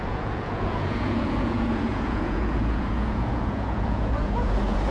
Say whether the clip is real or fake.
fake